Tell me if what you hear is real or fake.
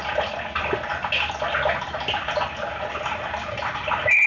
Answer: real